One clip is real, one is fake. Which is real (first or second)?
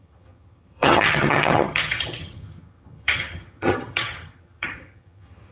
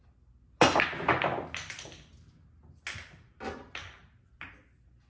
second